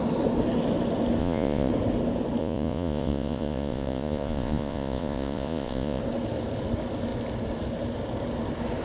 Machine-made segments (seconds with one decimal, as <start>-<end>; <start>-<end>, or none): 1.2-1.7; 2.4-6.0